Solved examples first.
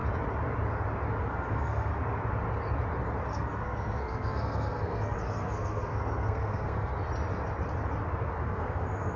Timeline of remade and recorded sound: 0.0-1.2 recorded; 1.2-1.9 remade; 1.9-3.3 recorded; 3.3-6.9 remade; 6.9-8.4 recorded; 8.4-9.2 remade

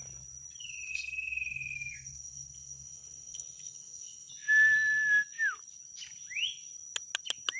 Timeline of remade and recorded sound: 0.0-0.9 recorded; 0.9-4.3 remade; 4.3-7.6 recorded

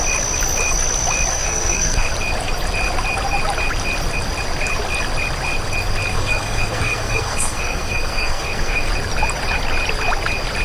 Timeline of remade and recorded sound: 0.0-1.3 recorded; 1.3-2.1 remade; 2.1-6.1 recorded; 6.1-8.9 remade; 8.9-10.6 recorded

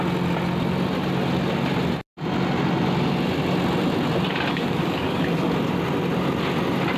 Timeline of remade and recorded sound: 0.0-4.5 recorded; 4.5-5.6 remade; 5.6-7.0 recorded